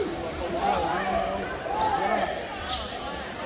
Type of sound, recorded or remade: recorded